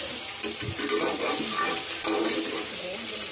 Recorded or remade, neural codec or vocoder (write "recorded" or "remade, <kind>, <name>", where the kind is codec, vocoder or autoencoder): recorded